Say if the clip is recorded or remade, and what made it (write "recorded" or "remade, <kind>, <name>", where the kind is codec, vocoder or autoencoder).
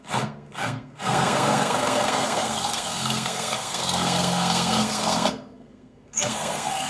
remade, codec, SNAC